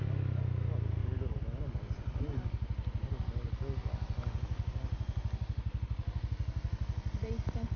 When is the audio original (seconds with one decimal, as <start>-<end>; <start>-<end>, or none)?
0.0-7.8